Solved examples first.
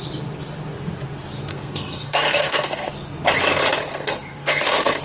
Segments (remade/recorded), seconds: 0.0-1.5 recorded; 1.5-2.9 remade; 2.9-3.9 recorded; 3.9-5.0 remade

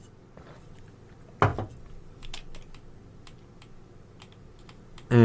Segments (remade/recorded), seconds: 0.0-5.2 recorded